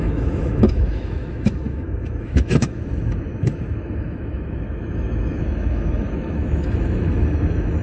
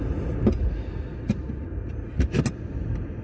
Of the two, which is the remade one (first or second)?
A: first